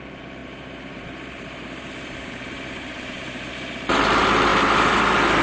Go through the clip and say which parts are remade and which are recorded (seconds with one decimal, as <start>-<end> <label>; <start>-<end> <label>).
0.0-0.4 recorded; 0.4-3.5 remade; 3.5-5.4 recorded